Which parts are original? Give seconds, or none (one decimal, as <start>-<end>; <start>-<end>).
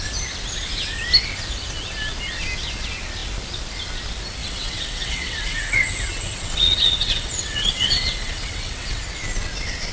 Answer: 0.0-4.4; 9.0-9.9